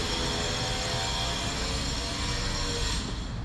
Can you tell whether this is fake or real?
real